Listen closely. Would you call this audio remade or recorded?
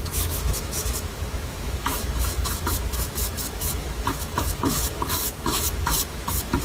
remade